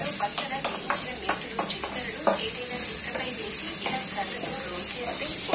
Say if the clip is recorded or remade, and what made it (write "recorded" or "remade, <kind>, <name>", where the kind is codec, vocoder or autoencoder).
recorded